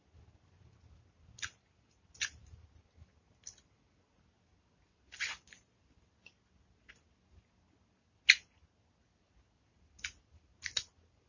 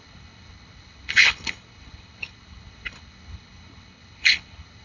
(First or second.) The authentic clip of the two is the first